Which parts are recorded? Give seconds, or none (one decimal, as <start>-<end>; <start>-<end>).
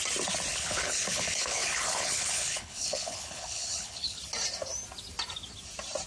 0.0-0.5; 4.2-6.1